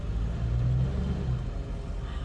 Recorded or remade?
recorded